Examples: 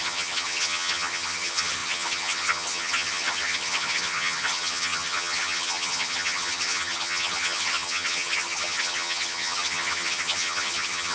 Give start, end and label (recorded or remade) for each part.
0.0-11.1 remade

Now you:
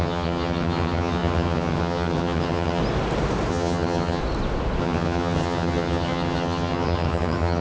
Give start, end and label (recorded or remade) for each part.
0.0-2.8 remade; 2.8-3.5 recorded; 3.5-4.2 remade; 4.2-4.8 recorded; 4.8-7.6 remade

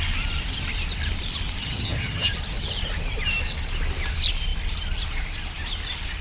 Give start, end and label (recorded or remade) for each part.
0.0-1.6 recorded; 1.6-2.3 remade; 2.3-6.2 recorded

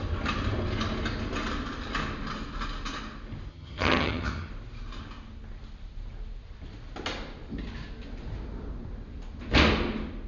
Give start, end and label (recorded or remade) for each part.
0.0-3.5 recorded; 3.5-4.5 remade; 4.5-10.3 recorded

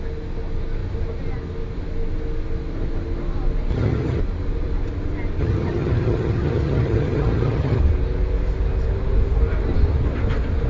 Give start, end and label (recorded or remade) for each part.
0.0-3.7 recorded; 3.7-4.2 remade; 4.2-5.4 recorded; 5.4-7.8 remade; 7.8-10.7 recorded

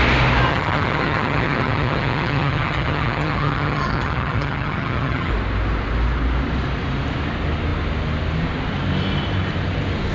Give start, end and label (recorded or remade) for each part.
0.0-0.5 recorded; 0.5-5.3 remade; 5.3-10.1 recorded

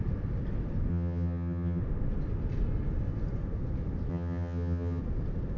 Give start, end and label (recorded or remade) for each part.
0.0-0.9 recorded; 0.9-1.8 remade; 1.8-4.1 recorded; 4.1-5.0 remade; 5.0-5.6 recorded